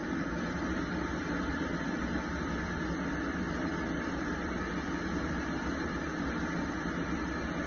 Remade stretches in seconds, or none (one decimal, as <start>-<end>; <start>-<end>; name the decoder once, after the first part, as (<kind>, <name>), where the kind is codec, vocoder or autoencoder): none